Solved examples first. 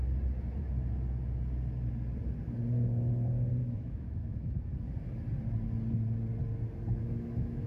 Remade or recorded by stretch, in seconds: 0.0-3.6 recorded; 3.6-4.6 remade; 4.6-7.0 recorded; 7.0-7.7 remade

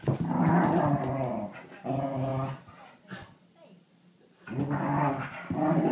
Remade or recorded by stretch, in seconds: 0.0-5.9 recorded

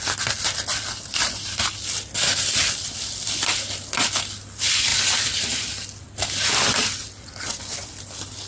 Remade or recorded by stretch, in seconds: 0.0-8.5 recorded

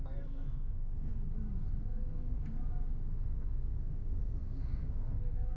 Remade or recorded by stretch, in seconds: 0.0-1.1 remade; 1.1-1.8 recorded; 1.8-2.6 remade; 2.6-3.2 recorded; 3.2-5.6 remade

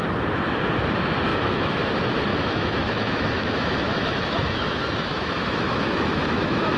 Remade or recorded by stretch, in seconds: 0.0-1.3 recorded; 1.3-1.9 remade; 1.9-2.3 recorded; 2.3-6.8 remade

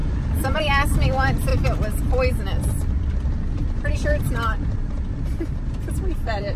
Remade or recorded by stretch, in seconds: 0.0-0.6 remade; 0.6-3.6 recorded; 3.6-6.6 remade

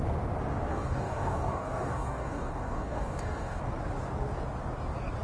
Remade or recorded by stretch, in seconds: 0.0-0.7 recorded; 0.7-3.6 remade; 3.6-5.2 recorded

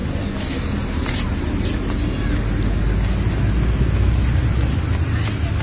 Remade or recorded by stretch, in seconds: 0.0-5.6 recorded